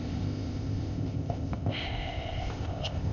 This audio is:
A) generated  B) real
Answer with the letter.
A